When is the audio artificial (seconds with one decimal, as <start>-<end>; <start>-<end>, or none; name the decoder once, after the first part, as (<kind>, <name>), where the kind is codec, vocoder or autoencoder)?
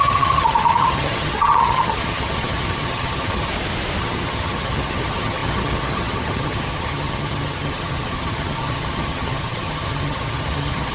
0.0-3.5 (vocoder, HiFi-GAN); 4.0-10.9